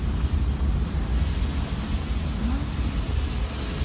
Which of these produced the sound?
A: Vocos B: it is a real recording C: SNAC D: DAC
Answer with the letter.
B